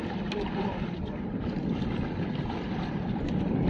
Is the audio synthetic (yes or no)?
yes